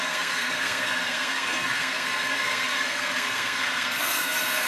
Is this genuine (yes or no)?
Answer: no